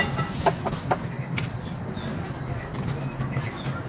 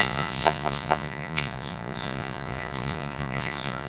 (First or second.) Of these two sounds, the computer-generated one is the second